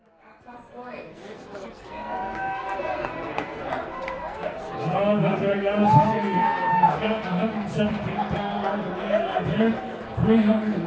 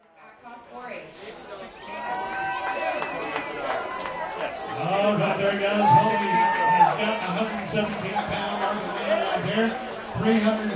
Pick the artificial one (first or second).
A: first